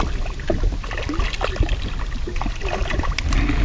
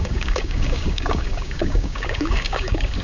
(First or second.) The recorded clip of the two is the first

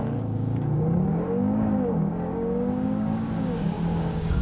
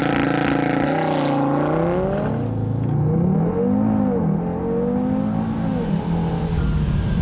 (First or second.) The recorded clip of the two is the second